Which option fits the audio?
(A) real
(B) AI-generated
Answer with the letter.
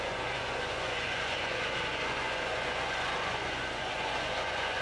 B